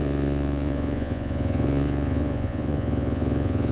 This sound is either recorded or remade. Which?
remade